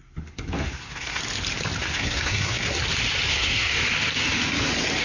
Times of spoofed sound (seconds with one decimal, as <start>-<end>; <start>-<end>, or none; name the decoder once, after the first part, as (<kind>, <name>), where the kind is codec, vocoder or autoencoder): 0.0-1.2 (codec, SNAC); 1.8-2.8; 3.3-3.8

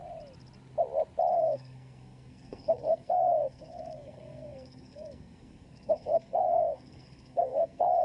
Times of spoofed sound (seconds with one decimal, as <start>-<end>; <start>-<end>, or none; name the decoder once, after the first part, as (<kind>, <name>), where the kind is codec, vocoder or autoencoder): 1.3-8.0 (codec, SNAC)

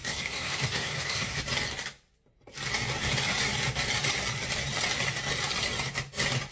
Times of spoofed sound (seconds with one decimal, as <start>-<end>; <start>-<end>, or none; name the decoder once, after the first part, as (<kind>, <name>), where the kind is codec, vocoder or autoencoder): 0.0-1.4 (codec, SNAC)

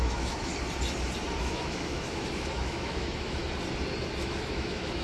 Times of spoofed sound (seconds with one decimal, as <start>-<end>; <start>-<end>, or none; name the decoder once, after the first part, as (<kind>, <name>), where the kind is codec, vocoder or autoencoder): 0.0-0.5 (autoencoder, DAC-VAE); 1.4-3.4; 4.2-5.0